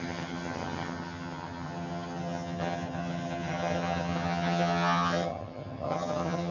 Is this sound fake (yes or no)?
yes